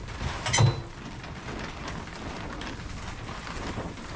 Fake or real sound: real